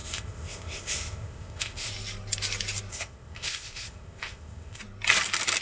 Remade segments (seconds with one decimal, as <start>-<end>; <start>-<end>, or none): 0.0-1.9; 2.9-4.8